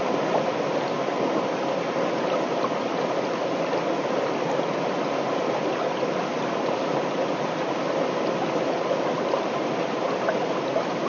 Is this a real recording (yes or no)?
yes